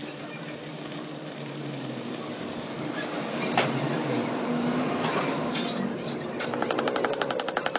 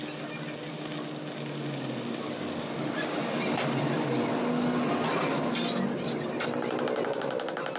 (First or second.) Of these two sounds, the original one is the second